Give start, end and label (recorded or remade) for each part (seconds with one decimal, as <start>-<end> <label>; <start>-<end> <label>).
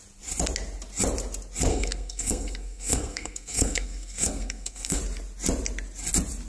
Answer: 0.0-1.7 recorded; 1.7-5.0 remade; 5.0-6.5 recorded